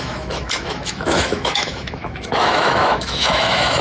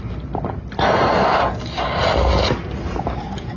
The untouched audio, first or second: second